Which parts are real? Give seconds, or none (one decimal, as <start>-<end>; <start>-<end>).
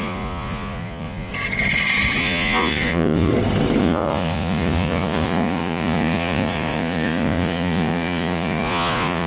1.3-2.2; 3.3-3.8